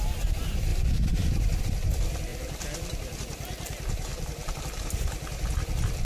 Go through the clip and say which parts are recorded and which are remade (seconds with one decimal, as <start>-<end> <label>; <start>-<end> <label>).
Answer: 0.0-0.7 recorded; 0.7-1.6 remade; 1.6-2.3 recorded; 2.3-3.2 remade; 3.2-4.1 recorded; 4.1-4.6 remade; 4.6-6.0 recorded